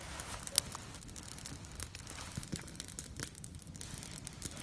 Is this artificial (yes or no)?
no